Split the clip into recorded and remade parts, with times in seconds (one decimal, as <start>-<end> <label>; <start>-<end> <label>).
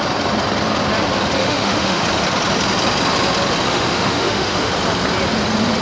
0.0-1.4 recorded; 1.4-2.0 remade; 2.0-3.7 recorded; 3.7-4.7 remade; 4.7-5.8 recorded